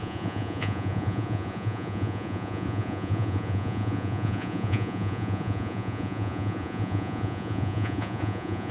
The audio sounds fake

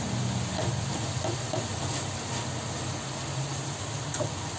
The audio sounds real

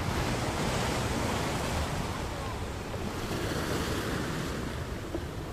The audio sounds real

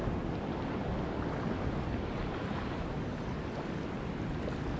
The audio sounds real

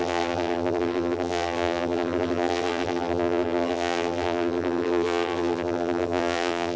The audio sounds fake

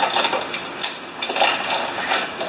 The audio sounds real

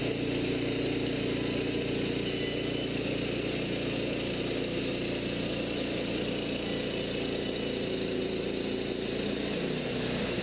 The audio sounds real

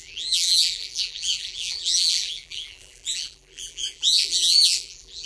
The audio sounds fake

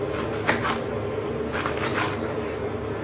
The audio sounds real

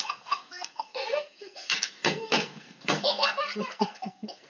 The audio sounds fake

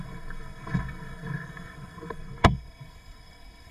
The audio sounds fake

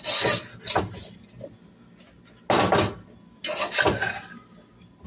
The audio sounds real